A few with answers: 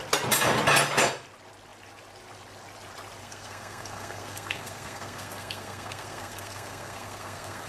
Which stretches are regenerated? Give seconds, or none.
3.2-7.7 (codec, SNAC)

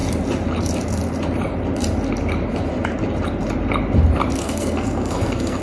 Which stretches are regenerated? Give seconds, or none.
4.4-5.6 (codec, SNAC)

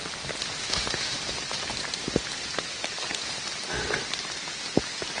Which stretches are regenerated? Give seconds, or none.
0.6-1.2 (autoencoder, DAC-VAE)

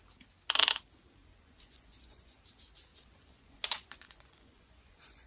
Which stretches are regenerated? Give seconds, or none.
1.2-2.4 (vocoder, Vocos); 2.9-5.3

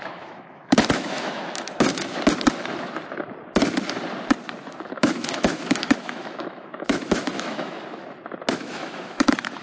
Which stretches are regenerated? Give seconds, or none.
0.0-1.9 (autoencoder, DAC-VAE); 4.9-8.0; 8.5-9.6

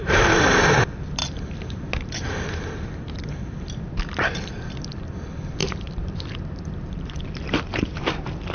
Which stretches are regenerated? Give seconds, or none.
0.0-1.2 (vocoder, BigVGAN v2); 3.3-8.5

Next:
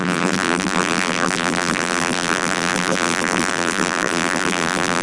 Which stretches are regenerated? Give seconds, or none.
0.0-5.0 (vocoder, BigVGAN v2)

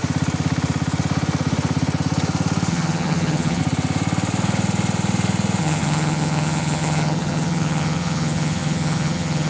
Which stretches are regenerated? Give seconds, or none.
2.7-3.6 (vocoder, HiFi-GAN); 5.6-9.5